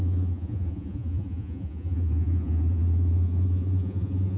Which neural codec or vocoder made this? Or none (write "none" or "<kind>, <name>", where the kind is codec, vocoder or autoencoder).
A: vocoder, Vocos